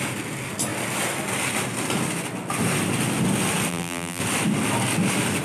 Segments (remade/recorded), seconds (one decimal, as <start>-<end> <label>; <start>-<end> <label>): 0.0-3.7 recorded; 3.7-4.2 remade; 4.2-5.4 recorded